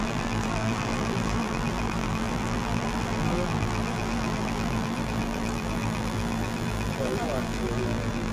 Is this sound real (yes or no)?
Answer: no